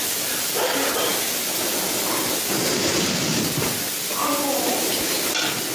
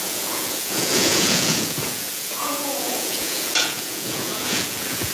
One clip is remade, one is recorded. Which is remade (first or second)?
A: second